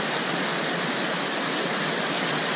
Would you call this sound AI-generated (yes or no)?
no